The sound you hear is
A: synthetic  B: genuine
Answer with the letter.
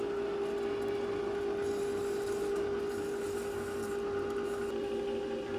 B